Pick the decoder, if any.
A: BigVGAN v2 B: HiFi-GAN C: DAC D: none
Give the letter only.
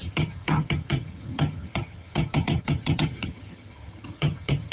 B